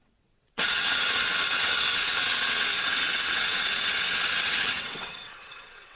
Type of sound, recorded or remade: remade